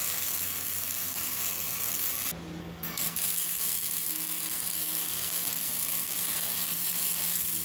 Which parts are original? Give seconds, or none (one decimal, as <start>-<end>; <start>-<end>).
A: 2.1-2.6